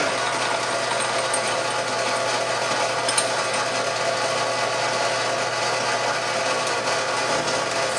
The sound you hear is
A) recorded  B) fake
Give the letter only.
A